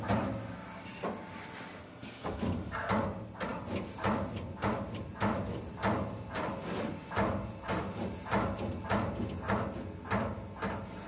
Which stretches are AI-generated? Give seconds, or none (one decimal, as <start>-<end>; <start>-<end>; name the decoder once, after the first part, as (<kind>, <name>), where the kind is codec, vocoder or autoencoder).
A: none